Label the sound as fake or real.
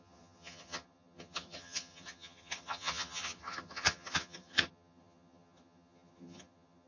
fake